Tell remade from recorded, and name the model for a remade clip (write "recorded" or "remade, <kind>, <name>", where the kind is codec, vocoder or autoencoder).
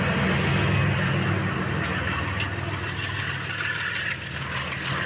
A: recorded